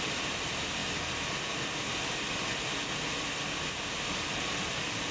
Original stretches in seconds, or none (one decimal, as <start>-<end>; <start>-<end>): 0.8-3.9